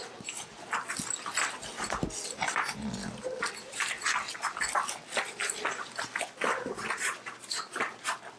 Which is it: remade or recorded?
recorded